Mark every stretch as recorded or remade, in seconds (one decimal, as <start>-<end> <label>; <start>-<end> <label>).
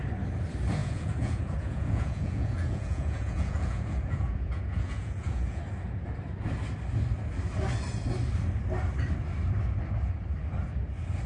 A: 0.0-0.8 recorded; 0.8-5.6 remade; 5.6-11.3 recorded